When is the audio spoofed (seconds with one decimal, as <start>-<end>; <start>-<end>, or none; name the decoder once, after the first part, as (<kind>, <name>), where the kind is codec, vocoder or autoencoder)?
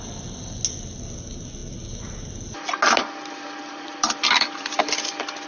3.0-4.8 (vocoder, BigVGAN v2)